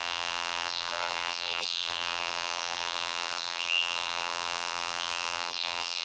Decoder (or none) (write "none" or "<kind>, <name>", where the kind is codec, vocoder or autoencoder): vocoder, BigVGAN v2